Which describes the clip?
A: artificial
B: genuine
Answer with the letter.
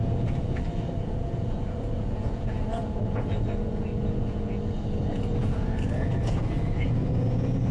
A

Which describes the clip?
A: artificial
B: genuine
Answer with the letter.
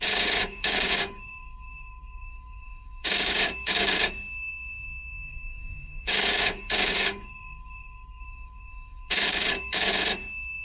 A